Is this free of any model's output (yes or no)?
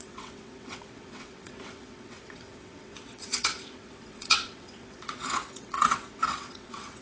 no